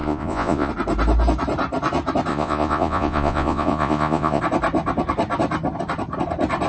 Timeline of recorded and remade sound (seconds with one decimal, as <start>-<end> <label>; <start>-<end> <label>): 0.0-0.7 remade; 0.7-2.3 recorded; 2.3-4.4 remade; 4.4-6.7 recorded